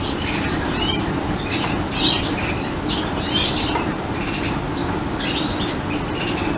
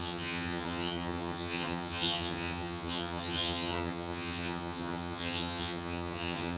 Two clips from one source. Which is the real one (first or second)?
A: first